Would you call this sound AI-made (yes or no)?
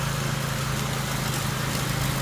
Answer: no